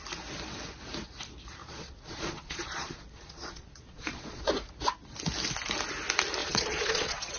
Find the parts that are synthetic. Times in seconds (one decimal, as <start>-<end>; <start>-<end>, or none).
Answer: 1.6-4.5; 6.4-7.4